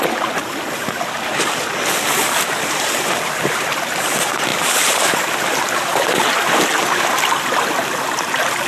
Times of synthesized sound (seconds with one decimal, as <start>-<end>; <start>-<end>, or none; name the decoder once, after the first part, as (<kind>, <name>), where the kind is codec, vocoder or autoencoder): none